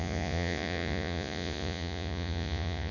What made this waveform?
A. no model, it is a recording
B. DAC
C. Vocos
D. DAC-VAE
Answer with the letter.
C